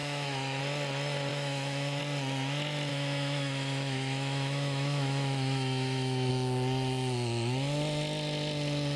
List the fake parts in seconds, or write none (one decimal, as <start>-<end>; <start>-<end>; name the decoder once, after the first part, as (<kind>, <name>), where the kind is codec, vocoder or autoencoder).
0.0-0.6 (autoencoder, DAC-VAE); 1.3-2.0; 2.9-6.3